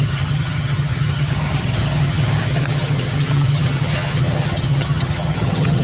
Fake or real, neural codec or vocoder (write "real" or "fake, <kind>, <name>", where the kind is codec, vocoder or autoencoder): fake, vocoder, HiFi-GAN